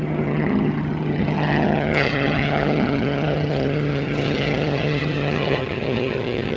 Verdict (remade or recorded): remade